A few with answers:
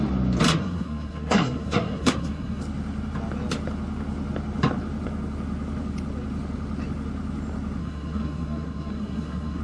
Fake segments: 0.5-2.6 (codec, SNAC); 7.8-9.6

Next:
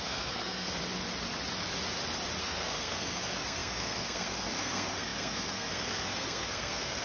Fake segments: 0.0-0.8 (codec, SNAC); 2.4-7.0

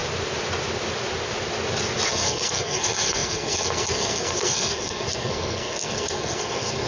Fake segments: 2.1-6.9 (codec, SNAC)

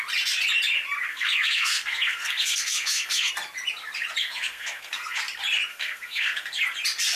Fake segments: 1.1-3.3 (codec, SNAC); 4.2-5.2; 5.7-6.6

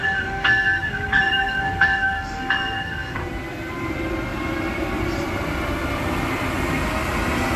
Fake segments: 0.0-3.2 (codec, SNAC)

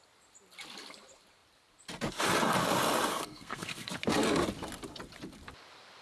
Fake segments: 3.1-3.9 (codec, SNAC)